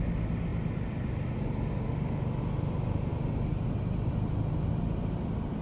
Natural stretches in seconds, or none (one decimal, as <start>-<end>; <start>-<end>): 0.0-5.6